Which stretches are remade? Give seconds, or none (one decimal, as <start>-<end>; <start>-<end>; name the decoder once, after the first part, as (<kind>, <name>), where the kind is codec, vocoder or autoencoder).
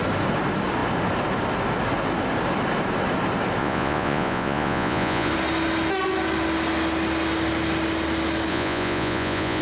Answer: 3.6-5.3 (vocoder, Vocos); 8.5-9.6